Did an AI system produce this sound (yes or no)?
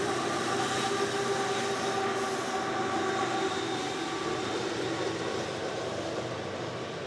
no